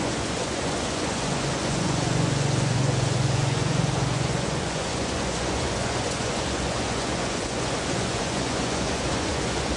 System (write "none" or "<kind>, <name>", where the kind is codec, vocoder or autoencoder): vocoder, Vocos